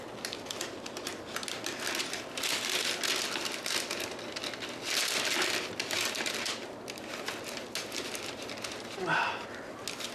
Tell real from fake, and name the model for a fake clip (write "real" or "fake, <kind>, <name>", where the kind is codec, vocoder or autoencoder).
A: real